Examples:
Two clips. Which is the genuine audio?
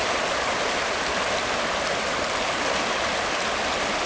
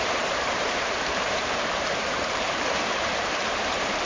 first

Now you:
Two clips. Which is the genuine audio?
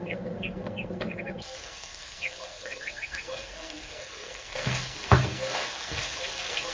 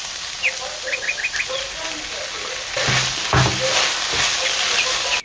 second